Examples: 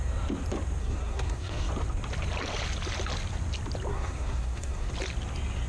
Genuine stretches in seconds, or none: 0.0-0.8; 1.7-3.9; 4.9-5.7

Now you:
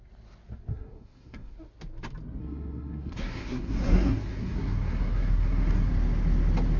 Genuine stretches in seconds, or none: 0.0-0.7; 1.5-2.4; 5.9-6.8

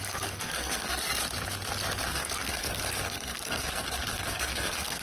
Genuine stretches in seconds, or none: 1.1-2.1

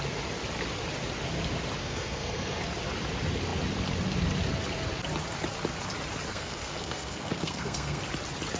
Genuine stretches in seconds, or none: 0.0-1.8; 2.6-6.3; 8.0-8.6

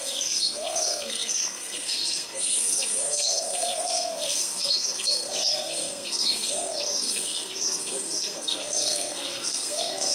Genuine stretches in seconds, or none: none

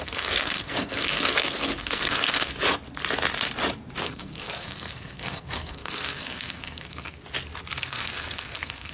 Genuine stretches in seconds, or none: 2.5-4.0; 7.2-7.8